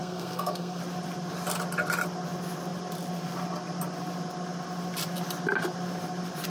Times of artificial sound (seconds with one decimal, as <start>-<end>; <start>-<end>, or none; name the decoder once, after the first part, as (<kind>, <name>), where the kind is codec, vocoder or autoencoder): 0.0-0.8 (codec, SNAC)